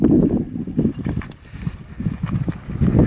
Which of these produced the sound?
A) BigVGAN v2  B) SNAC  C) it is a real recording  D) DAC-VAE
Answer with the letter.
C